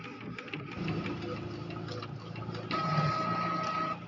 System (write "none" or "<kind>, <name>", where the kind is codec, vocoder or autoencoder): none